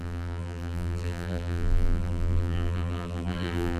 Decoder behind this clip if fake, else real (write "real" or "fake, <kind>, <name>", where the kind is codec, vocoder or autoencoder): fake, vocoder, BigVGAN v2